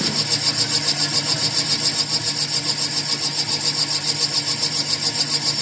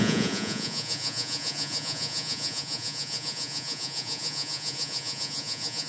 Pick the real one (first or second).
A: first